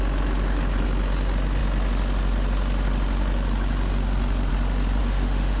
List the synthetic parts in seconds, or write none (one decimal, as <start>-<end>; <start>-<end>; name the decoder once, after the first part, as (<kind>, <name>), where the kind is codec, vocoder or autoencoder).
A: 5.0-5.6 (autoencoder, DAC-VAE)